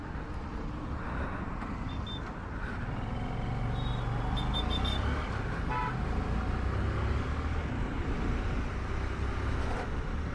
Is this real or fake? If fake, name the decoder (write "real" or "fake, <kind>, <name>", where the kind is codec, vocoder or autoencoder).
real